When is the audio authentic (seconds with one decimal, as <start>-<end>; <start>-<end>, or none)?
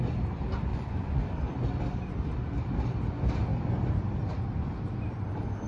0.0-0.7; 1.2-5.7